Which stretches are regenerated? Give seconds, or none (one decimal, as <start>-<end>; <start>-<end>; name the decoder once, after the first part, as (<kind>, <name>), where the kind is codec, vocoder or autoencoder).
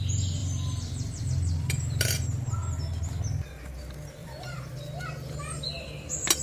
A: 0.4-1.2 (vocoder, BigVGAN v2); 4.2-5.0